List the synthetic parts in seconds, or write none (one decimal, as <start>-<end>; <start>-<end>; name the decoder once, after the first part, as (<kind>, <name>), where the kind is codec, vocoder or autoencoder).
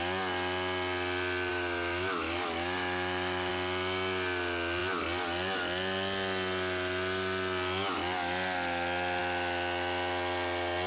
1.5-3.5 (autoencoder, DAC-VAE)